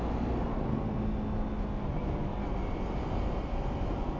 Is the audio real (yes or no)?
yes